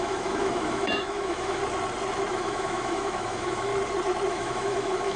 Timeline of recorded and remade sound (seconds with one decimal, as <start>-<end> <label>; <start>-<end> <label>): 0.0-1.6 remade; 1.6-2.3 recorded; 2.3-3.7 remade; 3.7-4.3 recorded; 4.3-5.2 remade